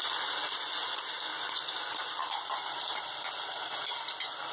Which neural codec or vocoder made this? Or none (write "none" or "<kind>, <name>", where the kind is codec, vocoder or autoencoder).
none